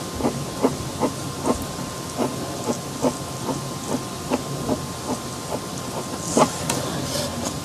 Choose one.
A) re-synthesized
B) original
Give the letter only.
B